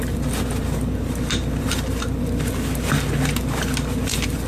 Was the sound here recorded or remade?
remade